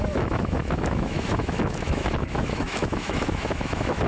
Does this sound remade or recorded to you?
remade